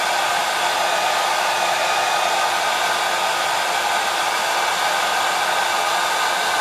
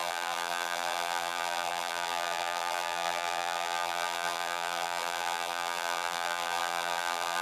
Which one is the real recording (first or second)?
first